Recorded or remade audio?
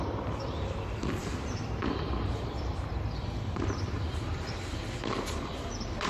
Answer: remade